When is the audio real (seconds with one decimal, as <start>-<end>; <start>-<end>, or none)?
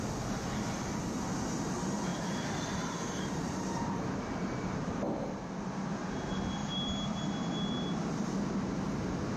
0.0-2.1; 4.9-6.6; 7.2-9.4